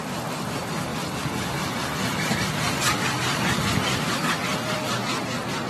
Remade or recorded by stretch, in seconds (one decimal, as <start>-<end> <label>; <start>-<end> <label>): 0.0-5.7 recorded

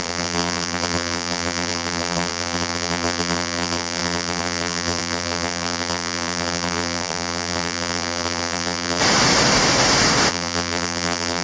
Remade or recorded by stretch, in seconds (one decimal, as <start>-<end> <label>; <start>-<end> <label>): 0.0-9.0 remade; 9.0-10.3 recorded; 10.3-11.4 remade

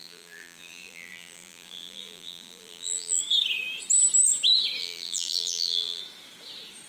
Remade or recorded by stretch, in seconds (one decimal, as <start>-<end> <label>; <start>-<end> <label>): 0.0-3.2 remade; 3.2-4.8 recorded; 4.8-6.0 remade; 6.0-6.9 recorded